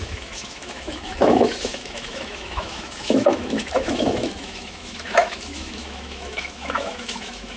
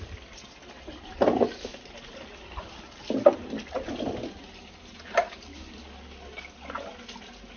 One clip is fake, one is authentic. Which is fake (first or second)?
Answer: first